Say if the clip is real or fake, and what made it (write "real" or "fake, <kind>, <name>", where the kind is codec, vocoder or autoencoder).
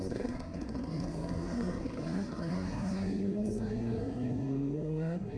fake, codec, SNAC